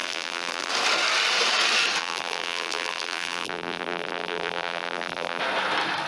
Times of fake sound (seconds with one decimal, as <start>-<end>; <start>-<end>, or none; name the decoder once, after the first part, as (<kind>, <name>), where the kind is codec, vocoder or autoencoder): 0.0-0.7 (vocoder, BigVGAN v2); 2.0-5.4